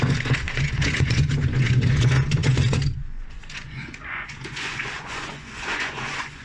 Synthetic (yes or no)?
yes